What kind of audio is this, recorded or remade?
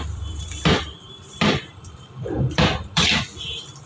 remade